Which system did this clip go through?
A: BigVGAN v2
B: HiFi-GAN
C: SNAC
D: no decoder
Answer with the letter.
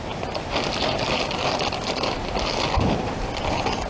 D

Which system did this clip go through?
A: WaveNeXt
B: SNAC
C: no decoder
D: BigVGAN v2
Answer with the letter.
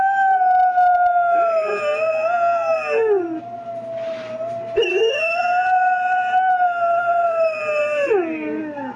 C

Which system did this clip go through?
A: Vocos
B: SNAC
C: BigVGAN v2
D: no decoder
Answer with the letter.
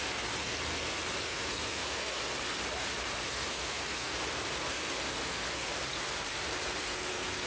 D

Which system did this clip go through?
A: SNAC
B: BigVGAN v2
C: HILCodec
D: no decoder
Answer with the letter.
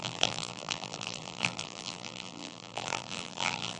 B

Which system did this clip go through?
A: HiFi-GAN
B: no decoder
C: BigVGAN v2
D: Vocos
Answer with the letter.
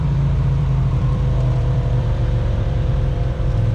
C